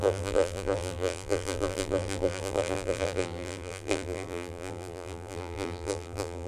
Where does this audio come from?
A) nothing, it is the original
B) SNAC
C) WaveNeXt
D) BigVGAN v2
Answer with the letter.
D